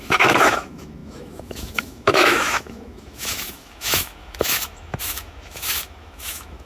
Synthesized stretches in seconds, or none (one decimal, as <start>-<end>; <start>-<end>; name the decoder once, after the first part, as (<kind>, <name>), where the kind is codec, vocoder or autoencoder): 0.0-6.7 (autoencoder, DAC-VAE)